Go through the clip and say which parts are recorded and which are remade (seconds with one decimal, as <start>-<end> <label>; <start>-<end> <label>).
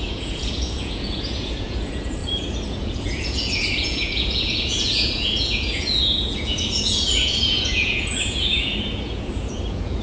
0.0-10.0 remade